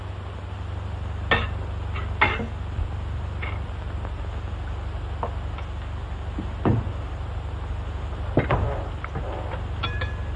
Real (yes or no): yes